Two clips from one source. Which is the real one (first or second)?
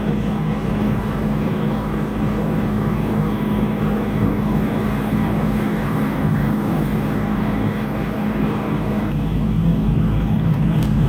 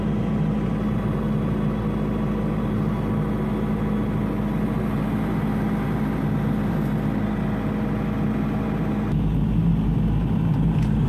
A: second